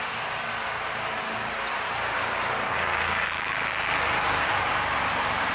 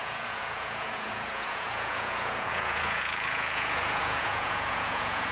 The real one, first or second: first